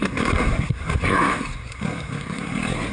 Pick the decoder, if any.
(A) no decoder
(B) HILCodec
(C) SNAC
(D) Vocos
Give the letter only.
C